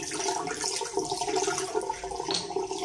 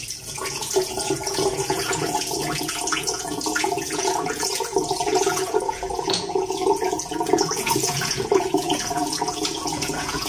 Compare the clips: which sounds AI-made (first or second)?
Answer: second